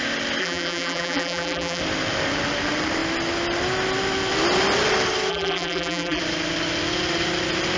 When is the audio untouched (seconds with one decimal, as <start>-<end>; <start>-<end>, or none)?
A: 0.0-0.4; 1.8-5.3; 6.2-7.8